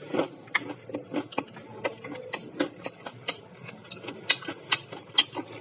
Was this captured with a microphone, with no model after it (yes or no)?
yes